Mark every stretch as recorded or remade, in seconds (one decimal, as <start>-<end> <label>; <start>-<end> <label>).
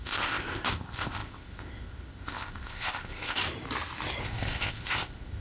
0.0-3.4 remade; 3.4-4.2 recorded; 4.2-5.4 remade